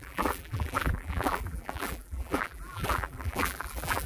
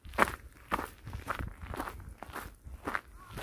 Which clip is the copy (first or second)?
first